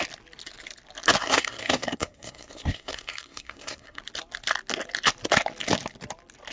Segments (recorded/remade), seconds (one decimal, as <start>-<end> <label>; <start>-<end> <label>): 0.0-1.2 recorded; 1.2-4.0 remade; 4.0-6.5 recorded